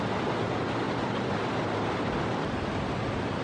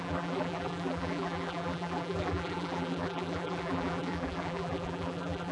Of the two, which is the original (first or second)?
first